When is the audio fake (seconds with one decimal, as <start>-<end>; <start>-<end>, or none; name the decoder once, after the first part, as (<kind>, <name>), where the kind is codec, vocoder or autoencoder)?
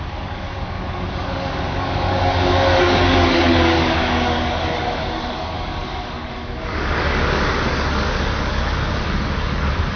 0.0-10.0 (codec, DAC)